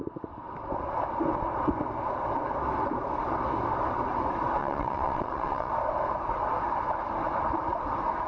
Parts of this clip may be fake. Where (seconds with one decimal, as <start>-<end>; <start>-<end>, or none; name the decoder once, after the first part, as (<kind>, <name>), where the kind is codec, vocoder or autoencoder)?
4.6-5.7 (vocoder, WaveNeXt)